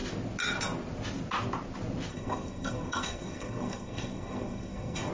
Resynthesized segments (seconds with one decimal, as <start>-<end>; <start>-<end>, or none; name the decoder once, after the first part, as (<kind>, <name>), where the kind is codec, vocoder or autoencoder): 2.1-5.1 (codec, SNAC)